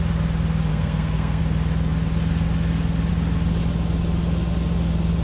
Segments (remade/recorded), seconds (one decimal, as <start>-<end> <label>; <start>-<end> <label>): 0.0-0.7 recorded; 0.7-1.4 remade; 1.4-5.2 recorded